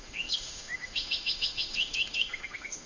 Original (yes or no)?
no